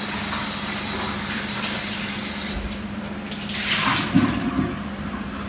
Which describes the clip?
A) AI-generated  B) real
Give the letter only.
B